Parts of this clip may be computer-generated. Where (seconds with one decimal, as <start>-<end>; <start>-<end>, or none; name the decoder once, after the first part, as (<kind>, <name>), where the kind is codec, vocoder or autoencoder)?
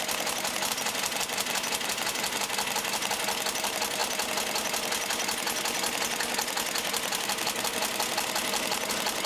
none